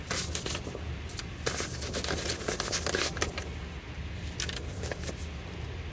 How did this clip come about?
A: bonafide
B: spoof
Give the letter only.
A